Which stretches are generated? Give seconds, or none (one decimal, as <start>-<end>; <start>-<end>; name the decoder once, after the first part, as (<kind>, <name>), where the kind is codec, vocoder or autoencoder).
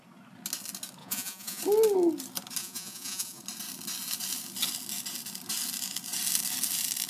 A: 1.0-1.6 (vocoder, Vocos); 2.6-3.4